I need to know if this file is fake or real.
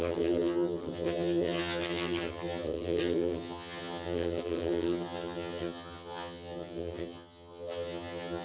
fake